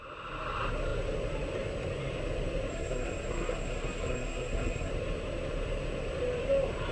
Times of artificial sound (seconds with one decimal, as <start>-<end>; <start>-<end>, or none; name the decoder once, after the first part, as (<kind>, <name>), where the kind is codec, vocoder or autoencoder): 2.7-4.9 (codec, SNAC)